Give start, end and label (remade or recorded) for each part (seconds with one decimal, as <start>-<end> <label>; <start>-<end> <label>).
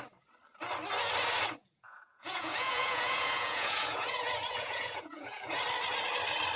0.0-1.6 recorded; 1.6-5.6 remade; 5.6-6.6 recorded